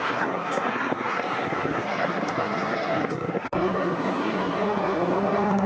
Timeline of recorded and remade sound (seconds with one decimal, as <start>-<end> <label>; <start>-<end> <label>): 0.0-5.7 remade